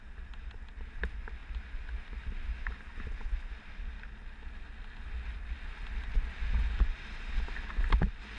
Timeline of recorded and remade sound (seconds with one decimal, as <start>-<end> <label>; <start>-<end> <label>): 0.0-8.4 recorded